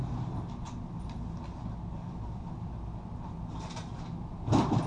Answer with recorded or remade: recorded